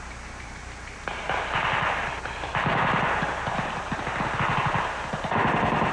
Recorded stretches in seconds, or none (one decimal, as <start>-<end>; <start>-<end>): 0.0-5.9